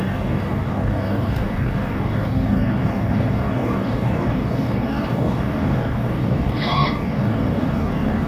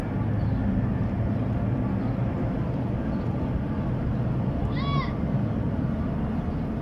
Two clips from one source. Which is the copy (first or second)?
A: first